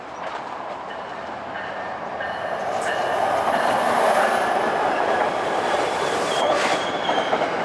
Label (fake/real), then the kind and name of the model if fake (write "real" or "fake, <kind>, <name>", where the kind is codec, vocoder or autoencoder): fake, vocoder, BigVGAN v2